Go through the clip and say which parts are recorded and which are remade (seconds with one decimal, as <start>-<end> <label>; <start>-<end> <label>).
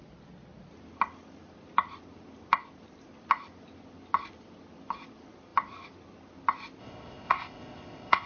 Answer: 0.0-6.8 recorded; 6.8-8.3 remade